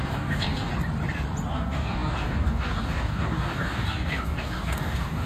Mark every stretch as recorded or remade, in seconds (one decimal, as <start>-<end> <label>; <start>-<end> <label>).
0.0-0.7 remade; 0.7-1.5 recorded; 1.5-5.3 remade